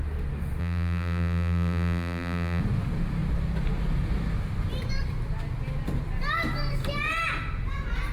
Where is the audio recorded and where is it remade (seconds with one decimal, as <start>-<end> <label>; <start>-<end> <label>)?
0.0-0.6 recorded; 0.6-2.6 remade; 2.6-8.1 recorded

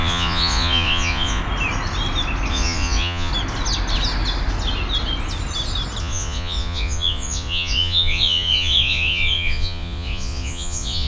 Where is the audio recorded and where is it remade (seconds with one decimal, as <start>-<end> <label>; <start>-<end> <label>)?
0.0-1.4 remade; 1.4-2.5 recorded; 2.5-3.3 remade; 3.3-6.0 recorded; 6.0-11.1 remade

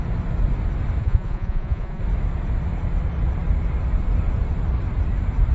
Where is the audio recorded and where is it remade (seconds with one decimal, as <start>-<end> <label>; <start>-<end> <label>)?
0.0-1.0 recorded; 1.0-2.0 remade; 2.0-5.5 recorded

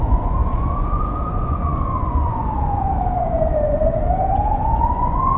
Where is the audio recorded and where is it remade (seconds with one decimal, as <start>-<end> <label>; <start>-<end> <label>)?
0.0-3.8 remade; 3.8-4.3 recorded; 4.3-5.4 remade